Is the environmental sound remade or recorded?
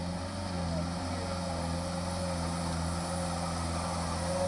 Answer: recorded